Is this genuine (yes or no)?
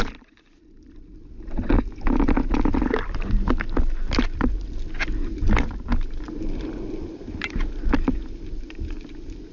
yes